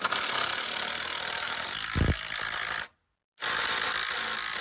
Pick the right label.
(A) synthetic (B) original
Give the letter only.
B